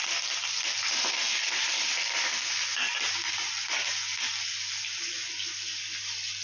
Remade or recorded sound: recorded